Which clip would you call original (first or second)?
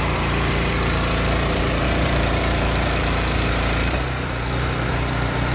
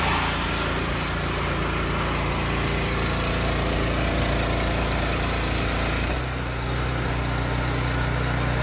second